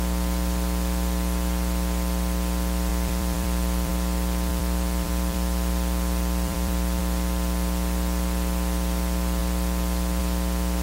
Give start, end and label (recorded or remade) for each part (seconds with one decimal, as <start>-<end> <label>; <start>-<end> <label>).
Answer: 0.0-2.9 recorded; 2.9-3.9 remade; 3.9-4.5 recorded; 4.5-7.0 remade; 7.0-10.8 recorded